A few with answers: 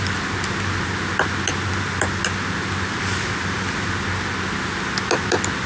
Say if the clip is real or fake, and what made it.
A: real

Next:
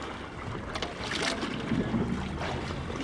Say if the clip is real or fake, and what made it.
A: real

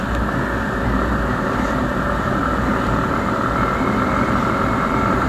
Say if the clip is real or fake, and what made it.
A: real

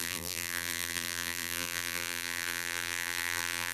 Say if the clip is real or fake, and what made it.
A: fake, vocoder, BigVGAN v2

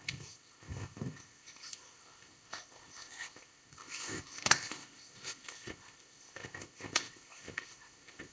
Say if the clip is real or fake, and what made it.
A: fake, codec, ZipCodec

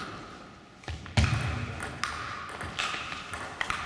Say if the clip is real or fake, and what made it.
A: real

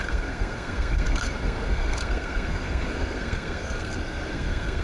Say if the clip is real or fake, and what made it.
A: fake, codec, SNAC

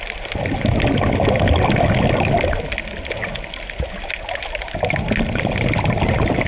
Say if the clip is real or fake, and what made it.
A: real